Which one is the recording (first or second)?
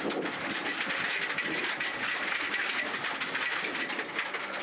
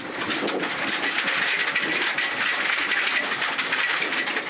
first